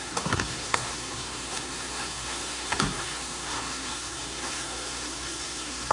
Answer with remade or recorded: remade